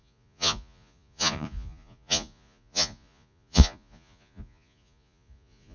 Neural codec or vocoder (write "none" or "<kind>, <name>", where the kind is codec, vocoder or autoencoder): vocoder, Vocos